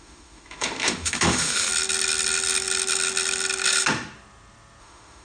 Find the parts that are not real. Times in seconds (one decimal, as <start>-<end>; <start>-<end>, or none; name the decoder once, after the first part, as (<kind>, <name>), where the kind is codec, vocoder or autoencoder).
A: 0.0-1.7 (autoencoder, DAC-VAE); 4.8-5.2